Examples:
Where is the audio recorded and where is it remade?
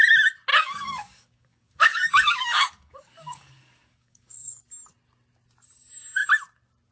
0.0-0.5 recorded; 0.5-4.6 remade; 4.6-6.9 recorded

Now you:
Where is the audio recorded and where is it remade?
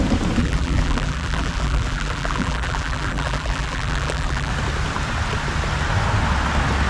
0.0-0.4 recorded; 0.4-4.5 remade; 4.5-6.9 recorded